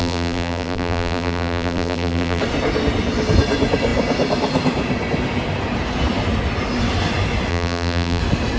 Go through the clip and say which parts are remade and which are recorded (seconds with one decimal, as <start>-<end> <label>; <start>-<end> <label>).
0.0-2.4 remade; 2.4-7.5 recorded; 7.5-8.2 remade; 8.2-8.6 recorded